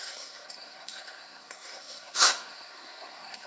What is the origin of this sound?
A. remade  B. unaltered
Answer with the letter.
A